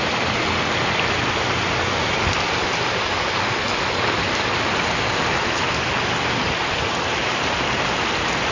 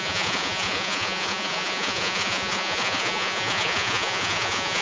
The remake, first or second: second